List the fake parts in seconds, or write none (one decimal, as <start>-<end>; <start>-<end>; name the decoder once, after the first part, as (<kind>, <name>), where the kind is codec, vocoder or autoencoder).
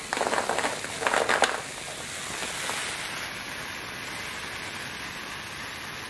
none